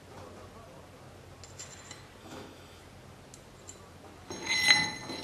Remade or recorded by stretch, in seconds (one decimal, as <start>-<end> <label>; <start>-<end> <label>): 0.0-2.2 recorded; 2.2-2.8 remade; 2.8-5.2 recorded